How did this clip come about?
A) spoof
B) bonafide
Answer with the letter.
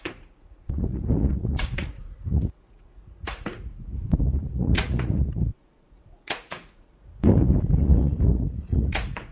A